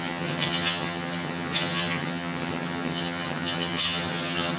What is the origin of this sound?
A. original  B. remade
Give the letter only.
B